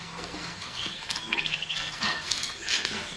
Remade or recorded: remade